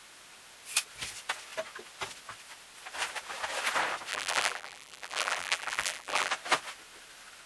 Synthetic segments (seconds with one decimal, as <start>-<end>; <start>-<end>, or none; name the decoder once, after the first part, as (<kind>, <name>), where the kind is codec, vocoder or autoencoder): 4.1-6.3 (vocoder, BigVGAN v2)